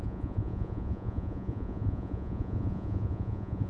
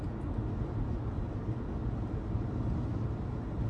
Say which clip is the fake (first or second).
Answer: first